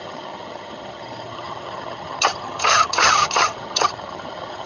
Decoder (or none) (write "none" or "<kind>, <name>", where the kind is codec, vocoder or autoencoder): vocoder, HiFi-GAN